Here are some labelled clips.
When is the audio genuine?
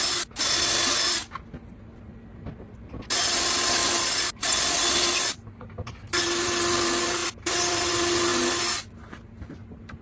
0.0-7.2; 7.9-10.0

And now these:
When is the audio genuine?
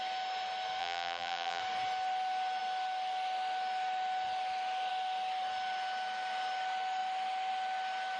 0.0-0.8; 1.6-8.2